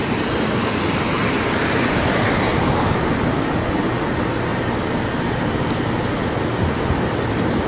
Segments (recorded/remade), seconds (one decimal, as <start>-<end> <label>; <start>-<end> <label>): 0.0-2.5 recorded; 2.5-3.2 remade; 3.2-7.7 recorded